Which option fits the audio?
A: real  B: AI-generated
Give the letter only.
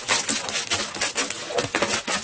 A